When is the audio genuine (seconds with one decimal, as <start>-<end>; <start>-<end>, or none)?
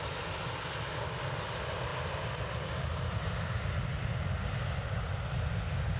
0.0-6.0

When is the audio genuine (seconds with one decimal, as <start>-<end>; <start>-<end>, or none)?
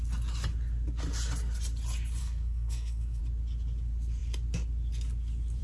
0.0-2.2; 3.2-5.6